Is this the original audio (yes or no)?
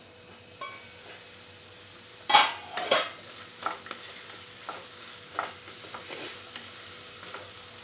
yes